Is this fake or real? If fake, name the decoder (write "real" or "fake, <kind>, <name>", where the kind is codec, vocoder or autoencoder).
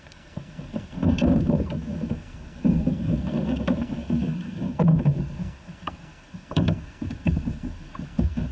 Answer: fake, codec, SNAC